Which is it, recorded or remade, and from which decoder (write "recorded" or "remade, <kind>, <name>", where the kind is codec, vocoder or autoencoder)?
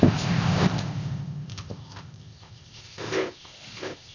remade, codec, ZipCodec